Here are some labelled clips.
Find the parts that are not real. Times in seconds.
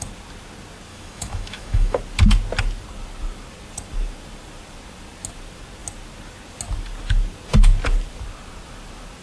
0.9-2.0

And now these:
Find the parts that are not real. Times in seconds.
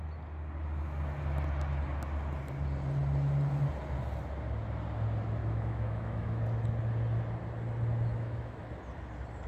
5.4-6.4; 8.1-8.7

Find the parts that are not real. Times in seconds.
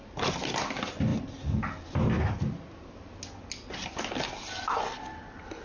none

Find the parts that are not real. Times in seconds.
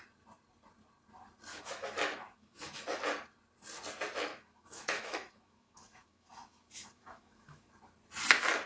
1.5-2.6; 4.3-7.7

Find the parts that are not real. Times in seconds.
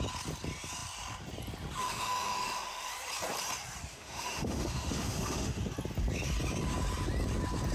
1.8-2.9; 3.9-5.6